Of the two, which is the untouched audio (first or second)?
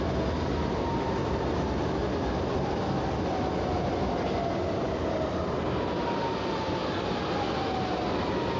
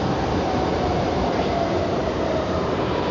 first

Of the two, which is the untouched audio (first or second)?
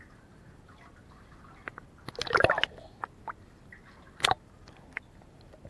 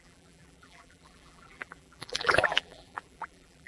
first